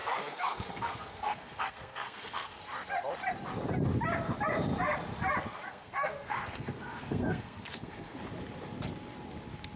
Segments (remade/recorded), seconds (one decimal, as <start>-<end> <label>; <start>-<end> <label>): 0.0-2.6 remade; 2.6-5.7 recorded; 5.7-8.2 remade; 8.2-9.8 recorded